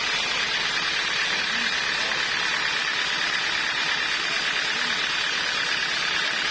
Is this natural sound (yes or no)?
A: yes